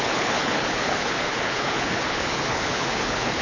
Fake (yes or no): yes